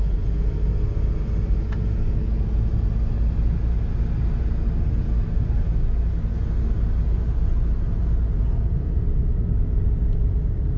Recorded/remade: recorded